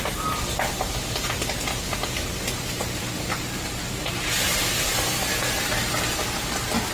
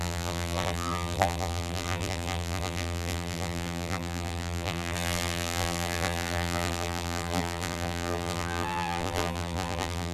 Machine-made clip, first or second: second